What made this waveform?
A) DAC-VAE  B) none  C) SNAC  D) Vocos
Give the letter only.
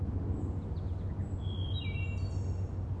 B